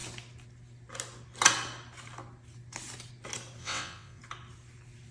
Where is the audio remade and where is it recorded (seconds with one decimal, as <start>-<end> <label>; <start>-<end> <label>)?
0.0-3.6 recorded; 3.6-4.2 remade; 4.2-5.1 recorded